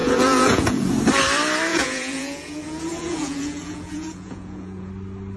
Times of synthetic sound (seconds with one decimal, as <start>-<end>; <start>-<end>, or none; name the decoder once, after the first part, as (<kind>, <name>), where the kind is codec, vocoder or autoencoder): 0.0-0.9 (vocoder, Vocos); 1.7-4.9